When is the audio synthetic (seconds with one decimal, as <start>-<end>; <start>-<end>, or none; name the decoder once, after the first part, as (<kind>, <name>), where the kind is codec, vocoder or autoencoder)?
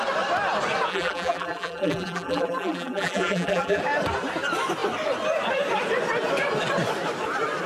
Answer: 0.9-3.8 (vocoder, BigVGAN v2)